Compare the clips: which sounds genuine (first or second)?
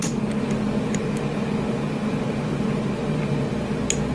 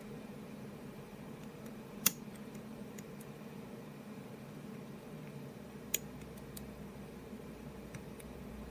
first